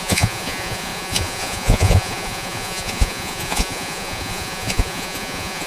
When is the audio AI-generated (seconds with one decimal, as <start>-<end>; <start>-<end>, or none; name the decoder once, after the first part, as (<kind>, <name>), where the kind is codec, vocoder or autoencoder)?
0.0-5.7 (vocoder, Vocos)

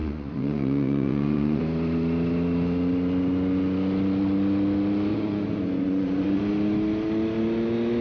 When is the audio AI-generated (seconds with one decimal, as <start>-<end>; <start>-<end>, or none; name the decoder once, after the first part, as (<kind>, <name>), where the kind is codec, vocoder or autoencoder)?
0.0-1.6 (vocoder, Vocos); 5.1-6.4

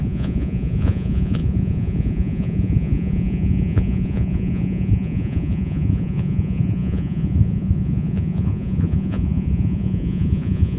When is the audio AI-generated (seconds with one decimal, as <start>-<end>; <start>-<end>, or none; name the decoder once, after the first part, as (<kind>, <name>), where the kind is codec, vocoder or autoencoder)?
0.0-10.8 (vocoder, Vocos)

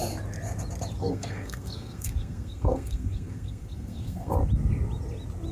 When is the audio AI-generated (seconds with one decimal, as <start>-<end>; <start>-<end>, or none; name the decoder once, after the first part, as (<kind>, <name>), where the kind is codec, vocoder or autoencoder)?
1.0-4.3 (codec, SNAC)

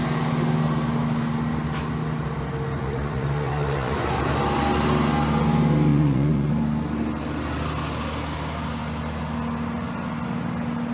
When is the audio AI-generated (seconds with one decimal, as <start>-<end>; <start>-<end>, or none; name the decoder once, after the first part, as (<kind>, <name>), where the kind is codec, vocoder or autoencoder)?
2.8-4.2 (vocoder, Vocos); 5.9-6.5

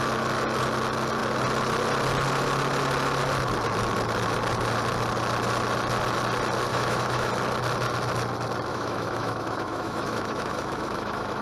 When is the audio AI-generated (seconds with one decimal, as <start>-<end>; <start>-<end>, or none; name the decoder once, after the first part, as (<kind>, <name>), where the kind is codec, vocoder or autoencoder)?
6.7-7.3 (autoencoder, DAC-VAE); 8.7-11.4